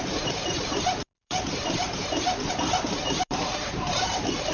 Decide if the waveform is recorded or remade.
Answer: remade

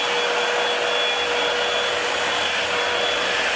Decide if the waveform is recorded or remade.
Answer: recorded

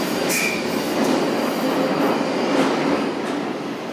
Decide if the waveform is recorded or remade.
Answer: recorded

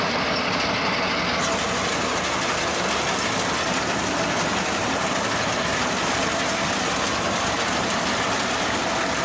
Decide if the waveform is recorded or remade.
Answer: recorded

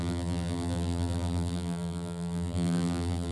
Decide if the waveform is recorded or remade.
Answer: remade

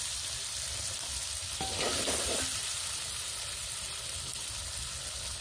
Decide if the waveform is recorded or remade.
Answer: recorded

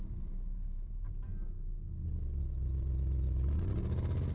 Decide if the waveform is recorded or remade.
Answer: recorded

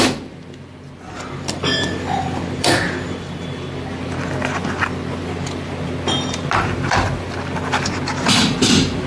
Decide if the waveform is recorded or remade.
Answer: remade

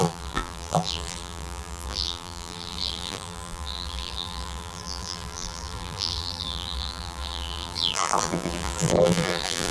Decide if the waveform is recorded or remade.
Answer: remade